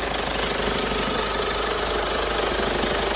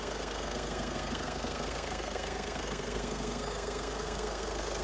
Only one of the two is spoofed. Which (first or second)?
second